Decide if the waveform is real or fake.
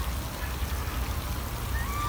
real